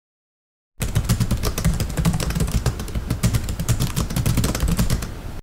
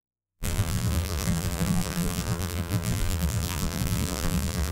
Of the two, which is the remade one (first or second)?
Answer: second